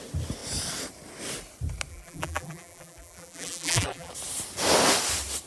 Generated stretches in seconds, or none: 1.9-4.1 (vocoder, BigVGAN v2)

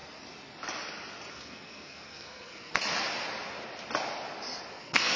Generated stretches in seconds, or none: 1.3-2.7 (codec, SNAC); 4.8-5.2